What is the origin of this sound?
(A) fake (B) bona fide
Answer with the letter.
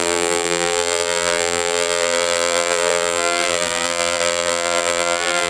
A